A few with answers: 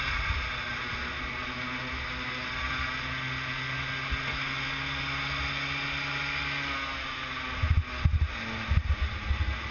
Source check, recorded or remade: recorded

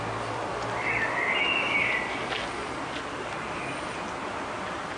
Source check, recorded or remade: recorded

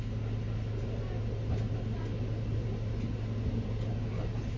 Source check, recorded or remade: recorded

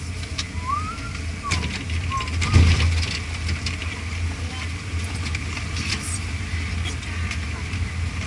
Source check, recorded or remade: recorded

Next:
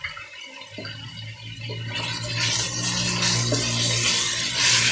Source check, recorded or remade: recorded